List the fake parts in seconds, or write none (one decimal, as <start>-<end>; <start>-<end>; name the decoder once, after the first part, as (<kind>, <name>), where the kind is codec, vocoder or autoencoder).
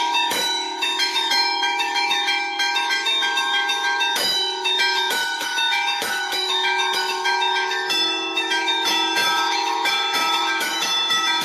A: 0.0-11.4 (autoencoder, DAC-VAE)